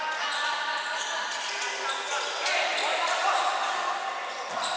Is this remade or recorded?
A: recorded